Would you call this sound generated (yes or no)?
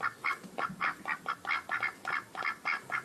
no